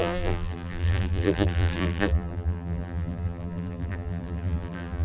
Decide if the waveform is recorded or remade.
remade